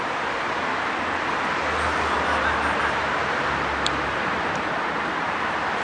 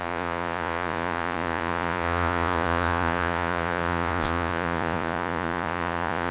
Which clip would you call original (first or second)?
first